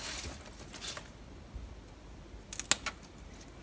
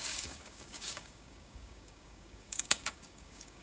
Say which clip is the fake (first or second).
second